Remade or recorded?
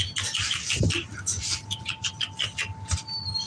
recorded